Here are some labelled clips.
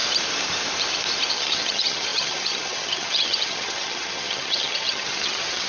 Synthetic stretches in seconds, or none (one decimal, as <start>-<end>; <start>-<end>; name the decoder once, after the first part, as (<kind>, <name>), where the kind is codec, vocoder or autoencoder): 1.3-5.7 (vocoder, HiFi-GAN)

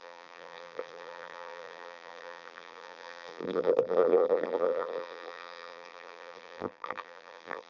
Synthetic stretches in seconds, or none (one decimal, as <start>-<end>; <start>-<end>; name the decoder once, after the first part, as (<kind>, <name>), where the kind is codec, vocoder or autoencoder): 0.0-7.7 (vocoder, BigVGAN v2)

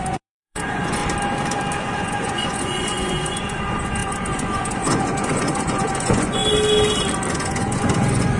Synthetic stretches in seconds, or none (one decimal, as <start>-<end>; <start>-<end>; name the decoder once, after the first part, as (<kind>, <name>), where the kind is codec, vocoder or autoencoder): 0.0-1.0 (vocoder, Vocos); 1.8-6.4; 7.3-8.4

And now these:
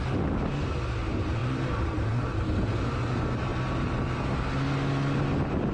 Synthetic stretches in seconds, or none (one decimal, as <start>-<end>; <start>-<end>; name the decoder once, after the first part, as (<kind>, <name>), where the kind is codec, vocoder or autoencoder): 1.4-3.1 (vocoder, BigVGAN v2); 3.5-4.4